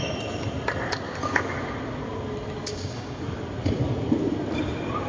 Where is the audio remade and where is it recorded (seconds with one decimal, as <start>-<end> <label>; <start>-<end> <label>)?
0.0-2.7 recorded; 2.7-3.2 remade; 3.2-5.1 recorded